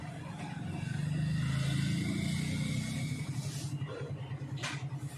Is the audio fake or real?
real